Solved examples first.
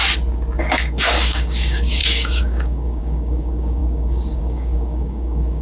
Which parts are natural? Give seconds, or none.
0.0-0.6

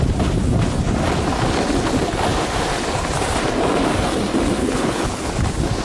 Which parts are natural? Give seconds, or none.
0.0-4.6; 5.3-5.8

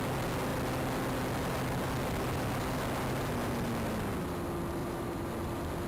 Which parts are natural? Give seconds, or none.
0.0-4.8; 5.3-5.9

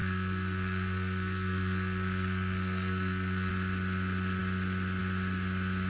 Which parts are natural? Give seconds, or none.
3.5-5.9

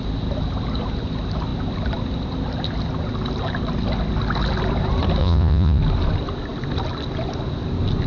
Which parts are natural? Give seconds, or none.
0.0-5.2; 5.8-8.1